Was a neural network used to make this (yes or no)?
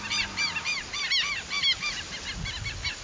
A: no